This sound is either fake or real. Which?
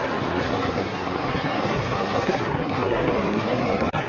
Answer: fake